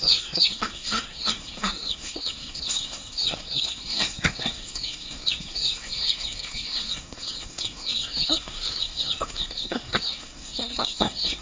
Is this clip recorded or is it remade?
remade